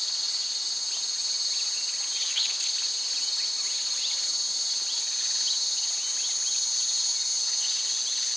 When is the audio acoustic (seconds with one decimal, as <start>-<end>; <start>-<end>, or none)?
0.0-2.2; 2.7-8.4